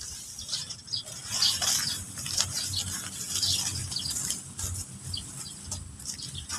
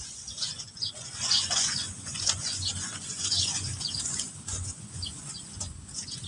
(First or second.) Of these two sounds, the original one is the first